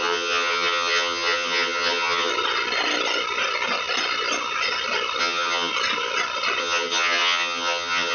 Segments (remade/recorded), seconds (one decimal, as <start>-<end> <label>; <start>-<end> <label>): 0.0-2.3 remade; 2.3-5.2 recorded; 5.2-5.7 remade; 5.7-6.6 recorded; 6.6-8.1 remade

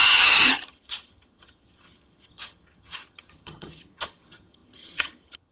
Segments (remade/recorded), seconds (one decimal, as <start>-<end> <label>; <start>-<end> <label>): 0.0-5.5 remade

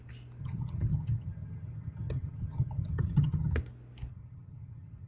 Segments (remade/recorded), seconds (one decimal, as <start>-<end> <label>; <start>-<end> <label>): 0.0-0.4 recorded; 0.4-3.5 remade; 3.5-4.1 recorded; 4.1-5.1 remade

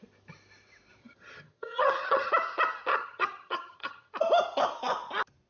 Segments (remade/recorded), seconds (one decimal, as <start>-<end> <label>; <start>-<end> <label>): 0.0-1.0 recorded; 1.0-2.3 remade; 2.3-2.9 recorded; 2.9-4.1 remade; 4.1-5.5 recorded

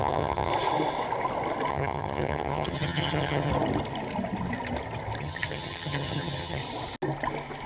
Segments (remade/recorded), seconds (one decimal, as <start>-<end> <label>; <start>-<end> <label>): 0.0-0.5 remade; 0.5-1.7 recorded; 1.7-3.5 remade; 3.5-5.2 recorded; 5.2-6.6 remade; 6.6-7.7 recorded

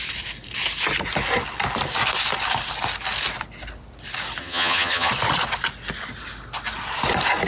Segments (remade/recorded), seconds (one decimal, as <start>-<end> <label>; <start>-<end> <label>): 0.0-4.4 recorded; 4.4-5.1 remade; 5.1-7.5 recorded